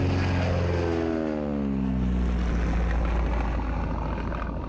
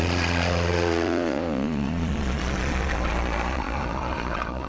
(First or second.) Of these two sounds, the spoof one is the second